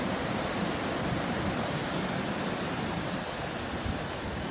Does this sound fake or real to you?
fake